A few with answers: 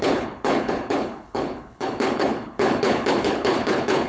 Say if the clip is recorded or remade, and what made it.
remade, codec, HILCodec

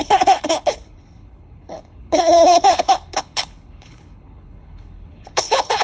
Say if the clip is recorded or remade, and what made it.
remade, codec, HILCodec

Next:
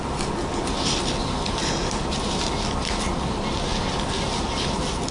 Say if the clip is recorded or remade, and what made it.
recorded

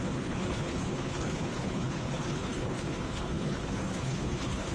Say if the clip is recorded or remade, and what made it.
remade, codec, HILCodec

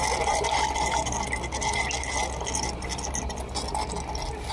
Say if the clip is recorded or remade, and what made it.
recorded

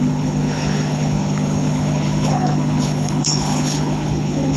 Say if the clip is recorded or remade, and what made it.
remade, codec, HILCodec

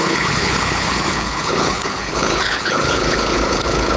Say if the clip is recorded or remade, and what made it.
remade, codec, HILCodec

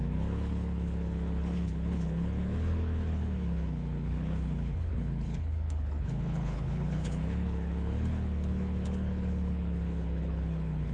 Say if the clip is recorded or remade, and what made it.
remade, codec, HILCodec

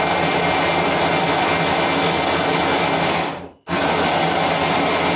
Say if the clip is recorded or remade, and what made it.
recorded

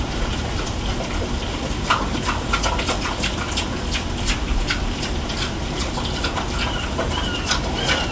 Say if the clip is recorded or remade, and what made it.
recorded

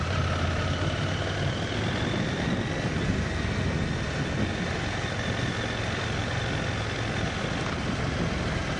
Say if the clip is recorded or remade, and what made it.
recorded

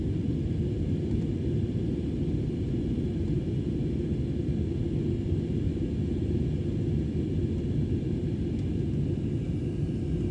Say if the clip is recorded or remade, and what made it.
recorded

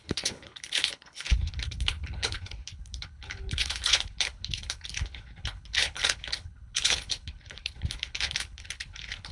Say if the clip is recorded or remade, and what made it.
remade, codec, HILCodec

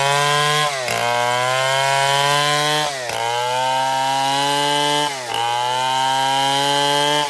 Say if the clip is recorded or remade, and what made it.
recorded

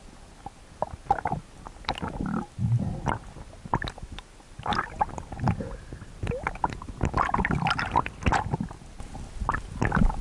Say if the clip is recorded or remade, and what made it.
recorded